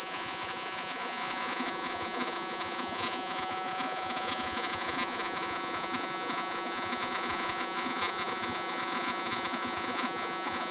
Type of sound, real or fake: fake